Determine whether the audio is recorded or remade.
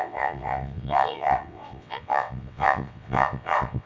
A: remade